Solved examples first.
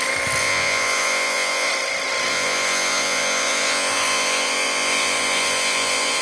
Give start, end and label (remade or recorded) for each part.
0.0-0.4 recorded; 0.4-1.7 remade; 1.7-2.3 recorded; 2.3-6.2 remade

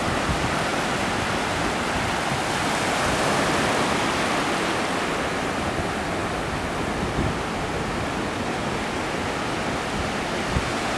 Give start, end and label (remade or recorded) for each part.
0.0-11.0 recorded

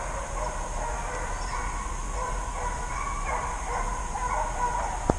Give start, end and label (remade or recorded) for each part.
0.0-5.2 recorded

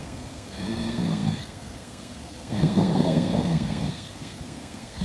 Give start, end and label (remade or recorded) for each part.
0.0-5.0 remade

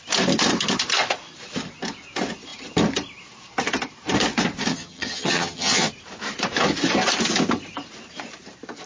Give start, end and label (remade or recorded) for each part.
0.0-4.7 recorded; 4.7-5.9 remade; 5.9-8.9 recorded

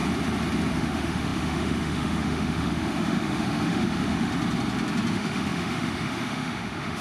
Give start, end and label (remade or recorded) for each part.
0.0-0.7 recorded; 0.7-4.3 remade; 4.3-5.1 recorded; 5.1-7.0 remade

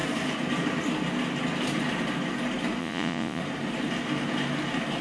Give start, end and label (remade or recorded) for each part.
0.0-2.8 recorded; 2.8-3.4 remade; 3.4-5.0 recorded

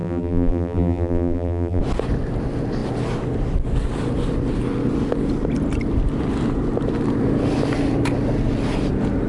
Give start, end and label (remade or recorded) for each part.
0.0-1.8 remade; 1.8-9.3 recorded